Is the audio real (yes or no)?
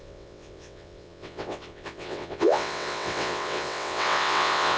no